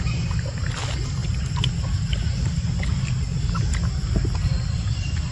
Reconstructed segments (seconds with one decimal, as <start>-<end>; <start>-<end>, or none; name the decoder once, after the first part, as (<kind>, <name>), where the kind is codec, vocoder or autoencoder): none